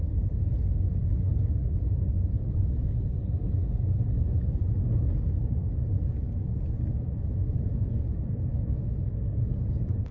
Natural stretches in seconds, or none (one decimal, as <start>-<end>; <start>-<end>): 0.0-8.5; 9.1-10.1